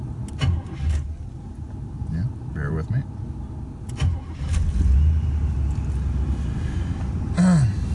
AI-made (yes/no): no